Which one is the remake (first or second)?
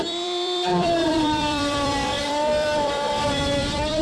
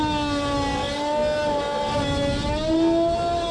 first